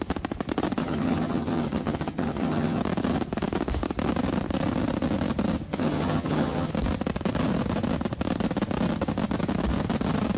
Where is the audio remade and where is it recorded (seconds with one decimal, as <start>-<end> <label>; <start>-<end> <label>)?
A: 0.0-0.8 recorded; 0.8-2.8 remade; 2.8-5.7 recorded; 5.7-6.7 remade; 6.7-10.4 recorded